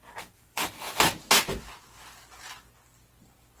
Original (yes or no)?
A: yes